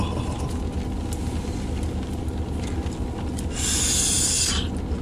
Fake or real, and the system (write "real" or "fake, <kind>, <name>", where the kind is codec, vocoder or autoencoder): real